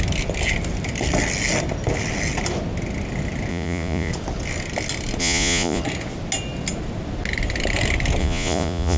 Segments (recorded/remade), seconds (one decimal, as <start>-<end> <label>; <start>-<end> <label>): 0.0-3.5 recorded; 3.5-4.1 remade; 4.1-5.2 recorded; 5.2-5.8 remade; 5.8-8.2 recorded; 8.2-9.0 remade